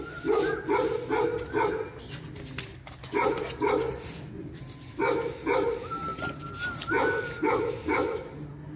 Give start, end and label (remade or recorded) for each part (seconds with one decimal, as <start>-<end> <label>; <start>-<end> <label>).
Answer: 0.0-6.1 recorded; 6.1-6.9 remade; 6.9-8.8 recorded